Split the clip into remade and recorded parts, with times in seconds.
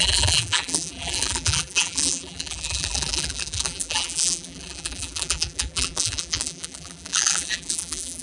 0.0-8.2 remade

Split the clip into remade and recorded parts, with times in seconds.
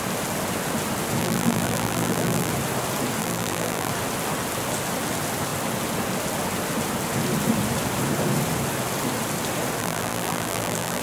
0.0-1.2 recorded; 1.2-2.5 remade; 2.5-3.2 recorded; 3.2-3.9 remade; 3.9-9.8 recorded; 9.8-11.0 remade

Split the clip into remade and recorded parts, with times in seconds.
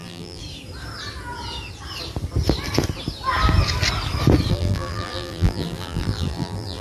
0.0-0.4 remade; 0.4-4.5 recorded; 4.5-6.8 remade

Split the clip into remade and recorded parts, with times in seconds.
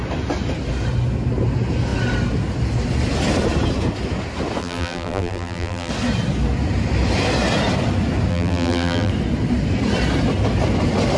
0.0-4.6 recorded; 4.6-5.9 remade; 5.9-8.3 recorded; 8.3-9.1 remade; 9.1-11.2 recorded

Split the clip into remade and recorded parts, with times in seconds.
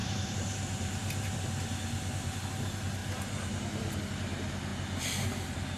0.0-2.4 remade; 2.4-3.0 recorded; 3.0-4.0 remade; 4.0-5.8 recorded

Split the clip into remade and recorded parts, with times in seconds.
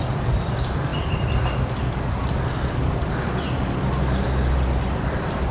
0.0-5.5 remade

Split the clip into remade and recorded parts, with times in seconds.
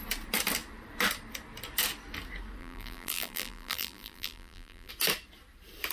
0.0-2.6 recorded; 2.6-4.9 remade; 4.9-5.9 recorded